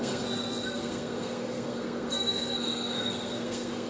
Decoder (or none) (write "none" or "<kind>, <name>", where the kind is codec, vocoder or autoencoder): codec, SNAC